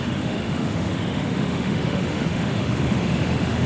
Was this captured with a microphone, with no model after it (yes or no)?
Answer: no